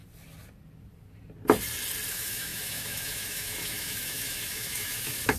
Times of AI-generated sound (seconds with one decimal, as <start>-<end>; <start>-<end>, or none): 2.1-5.4